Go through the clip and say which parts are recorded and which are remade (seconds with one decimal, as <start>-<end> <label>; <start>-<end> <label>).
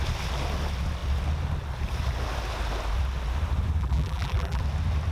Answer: 0.0-3.8 recorded; 3.8-4.6 remade; 4.6-5.1 recorded